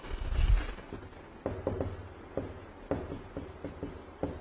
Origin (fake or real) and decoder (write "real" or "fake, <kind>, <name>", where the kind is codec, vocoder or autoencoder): real